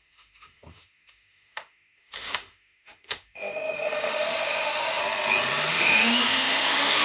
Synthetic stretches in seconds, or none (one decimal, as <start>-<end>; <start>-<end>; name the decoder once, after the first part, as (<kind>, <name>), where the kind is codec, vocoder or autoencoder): 0.0-5.0 (autoencoder, DAC-VAE); 5.7-7.0